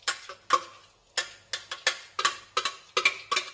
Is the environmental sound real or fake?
real